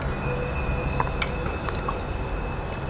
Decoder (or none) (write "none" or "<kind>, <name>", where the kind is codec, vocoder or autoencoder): none